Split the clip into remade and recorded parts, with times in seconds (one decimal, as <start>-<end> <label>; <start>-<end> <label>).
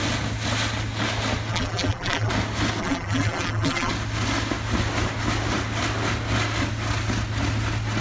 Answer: 0.0-1.5 recorded; 1.5-2.3 remade; 2.3-2.8 recorded; 2.8-3.9 remade; 3.9-8.0 recorded